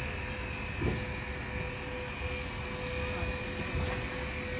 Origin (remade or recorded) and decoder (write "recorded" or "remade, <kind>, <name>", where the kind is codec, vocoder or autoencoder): recorded